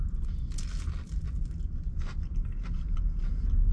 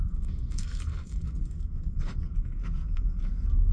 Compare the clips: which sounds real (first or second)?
first